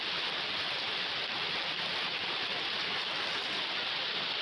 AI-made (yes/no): no